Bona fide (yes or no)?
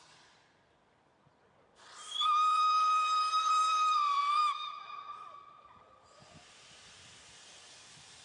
no